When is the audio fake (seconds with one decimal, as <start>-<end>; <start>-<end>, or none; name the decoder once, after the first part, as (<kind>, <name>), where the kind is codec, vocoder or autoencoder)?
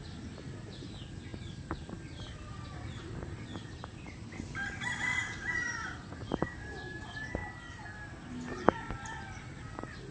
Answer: 1.3-3.0 (vocoder, BigVGAN v2); 5.2-6.3